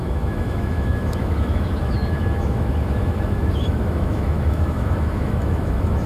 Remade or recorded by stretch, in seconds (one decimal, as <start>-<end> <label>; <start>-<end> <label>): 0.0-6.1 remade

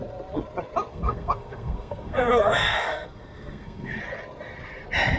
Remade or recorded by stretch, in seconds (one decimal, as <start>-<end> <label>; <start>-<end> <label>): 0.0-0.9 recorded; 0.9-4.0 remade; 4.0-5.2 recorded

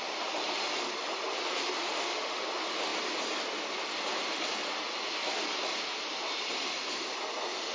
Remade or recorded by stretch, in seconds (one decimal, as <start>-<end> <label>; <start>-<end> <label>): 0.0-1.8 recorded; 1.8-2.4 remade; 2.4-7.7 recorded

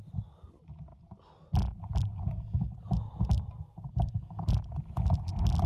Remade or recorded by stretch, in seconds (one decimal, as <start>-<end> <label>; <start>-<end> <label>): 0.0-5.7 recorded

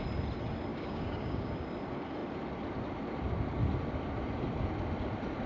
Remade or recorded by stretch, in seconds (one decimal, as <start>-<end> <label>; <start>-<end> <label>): 0.0-0.7 recorded; 0.7-1.5 remade; 1.5-5.5 recorded

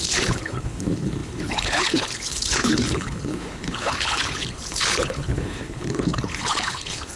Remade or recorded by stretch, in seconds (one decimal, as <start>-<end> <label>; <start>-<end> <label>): 0.0-7.2 remade